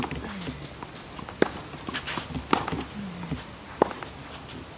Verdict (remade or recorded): recorded